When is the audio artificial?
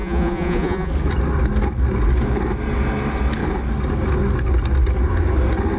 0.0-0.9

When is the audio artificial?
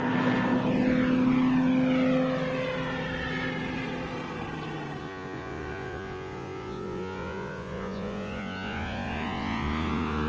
5.0-10.3